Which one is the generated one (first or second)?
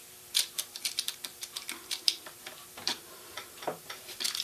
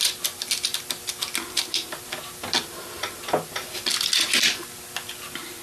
first